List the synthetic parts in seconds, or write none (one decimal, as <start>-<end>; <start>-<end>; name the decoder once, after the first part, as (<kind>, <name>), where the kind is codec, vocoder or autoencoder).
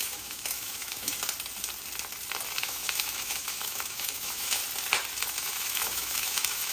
0.0-1.1 (autoencoder, DAC-VAE); 2.6-4.6; 5.3-6.7